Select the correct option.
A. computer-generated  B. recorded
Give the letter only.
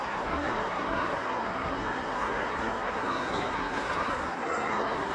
A